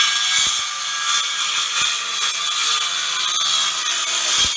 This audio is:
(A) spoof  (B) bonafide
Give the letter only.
B